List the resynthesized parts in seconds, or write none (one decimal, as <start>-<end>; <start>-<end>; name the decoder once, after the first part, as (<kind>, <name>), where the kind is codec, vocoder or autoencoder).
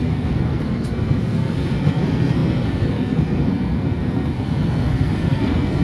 0.0-5.8 (codec, SNAC)